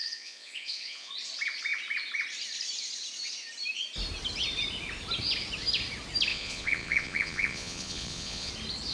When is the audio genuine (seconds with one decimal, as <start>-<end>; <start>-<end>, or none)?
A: 1.1-6.3; 8.5-8.9

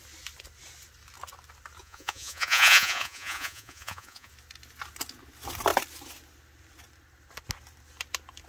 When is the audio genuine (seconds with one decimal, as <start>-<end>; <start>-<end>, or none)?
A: 0.0-1.8; 4.3-8.5

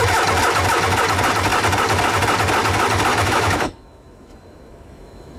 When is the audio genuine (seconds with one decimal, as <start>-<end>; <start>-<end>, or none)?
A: 0.0-3.1

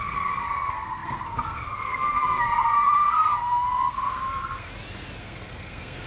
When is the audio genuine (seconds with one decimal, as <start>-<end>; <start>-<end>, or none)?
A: 4.7-5.2

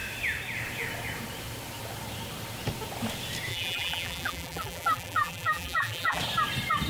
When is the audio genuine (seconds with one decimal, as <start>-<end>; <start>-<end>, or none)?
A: 0.0-3.5; 6.2-6.9

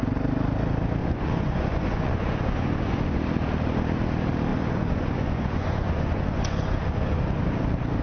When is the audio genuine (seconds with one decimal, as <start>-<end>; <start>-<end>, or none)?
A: 0.0-1.0; 3.2-4.5; 7.2-8.0

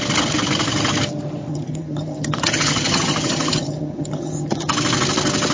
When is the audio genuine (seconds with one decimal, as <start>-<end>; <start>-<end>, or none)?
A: 0.0-1.5; 4.7-5.5